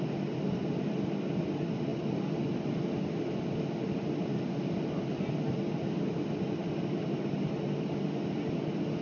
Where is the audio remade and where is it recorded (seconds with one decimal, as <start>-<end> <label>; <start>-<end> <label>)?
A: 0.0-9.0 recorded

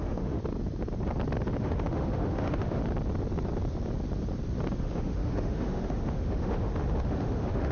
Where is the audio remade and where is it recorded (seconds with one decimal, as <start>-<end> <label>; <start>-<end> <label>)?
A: 0.0-0.4 remade; 0.4-1.6 recorded; 1.6-2.8 remade; 2.8-4.8 recorded; 4.8-7.7 remade

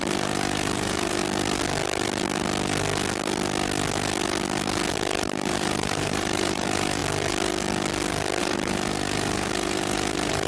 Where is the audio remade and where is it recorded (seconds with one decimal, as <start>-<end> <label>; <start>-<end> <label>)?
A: 0.0-1.2 remade; 1.2-5.0 recorded; 5.0-7.0 remade; 7.0-8.4 recorded; 8.4-10.5 remade